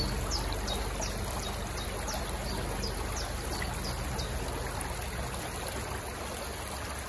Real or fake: real